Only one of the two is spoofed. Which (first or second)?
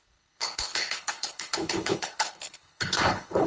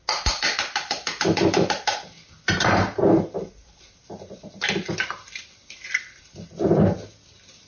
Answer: first